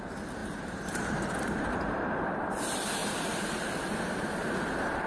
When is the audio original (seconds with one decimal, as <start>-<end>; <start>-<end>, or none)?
0.0-0.4; 2.6-3.0; 3.8-5.1